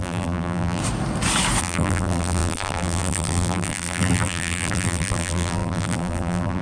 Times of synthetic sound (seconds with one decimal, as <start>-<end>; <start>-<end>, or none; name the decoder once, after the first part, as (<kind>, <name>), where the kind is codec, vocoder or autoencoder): 0.0-0.8 (vocoder, BigVGAN v2); 1.6-6.6

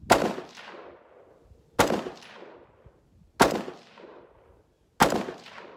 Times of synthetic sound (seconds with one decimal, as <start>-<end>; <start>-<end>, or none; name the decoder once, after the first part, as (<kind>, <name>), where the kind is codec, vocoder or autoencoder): none

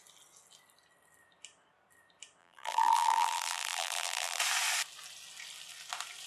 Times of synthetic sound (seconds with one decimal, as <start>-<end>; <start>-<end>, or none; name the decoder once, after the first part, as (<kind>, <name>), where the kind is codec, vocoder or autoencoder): 2.4-4.4 (vocoder, BigVGAN v2)

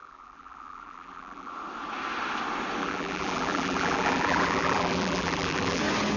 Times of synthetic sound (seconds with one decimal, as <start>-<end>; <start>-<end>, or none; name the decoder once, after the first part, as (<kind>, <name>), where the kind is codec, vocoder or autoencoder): 0.0-1.5 (vocoder, BigVGAN v2); 2.8-5.8

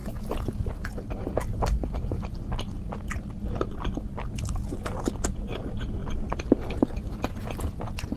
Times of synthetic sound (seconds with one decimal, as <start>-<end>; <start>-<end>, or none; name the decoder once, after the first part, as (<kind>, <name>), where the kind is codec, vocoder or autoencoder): 0.0-2.9 (vocoder, BigVGAN v2)

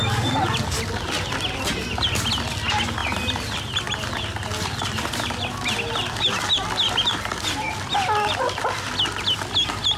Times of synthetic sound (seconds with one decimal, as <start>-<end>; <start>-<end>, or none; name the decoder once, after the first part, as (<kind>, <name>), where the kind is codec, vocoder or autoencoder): none